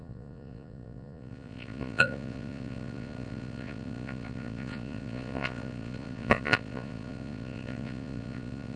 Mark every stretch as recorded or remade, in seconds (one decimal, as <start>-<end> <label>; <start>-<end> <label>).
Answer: 0.0-8.8 remade